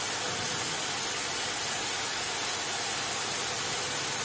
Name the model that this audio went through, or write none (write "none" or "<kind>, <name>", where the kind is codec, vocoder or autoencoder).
none